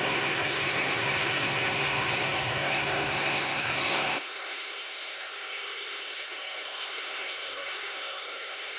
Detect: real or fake fake